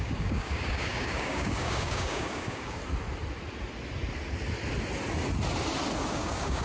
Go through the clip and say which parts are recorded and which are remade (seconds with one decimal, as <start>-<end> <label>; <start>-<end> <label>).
0.0-2.8 remade; 2.8-6.1 recorded; 6.1-6.6 remade